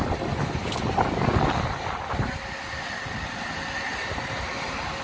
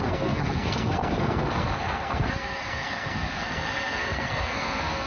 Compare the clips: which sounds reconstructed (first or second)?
second